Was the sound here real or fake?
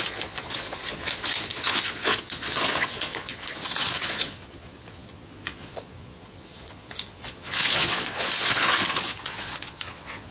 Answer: fake